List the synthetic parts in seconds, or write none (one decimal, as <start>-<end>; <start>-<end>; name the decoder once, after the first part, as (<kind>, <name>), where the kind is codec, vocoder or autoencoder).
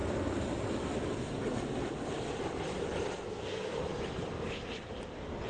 3.3-3.8 (codec, SNAC)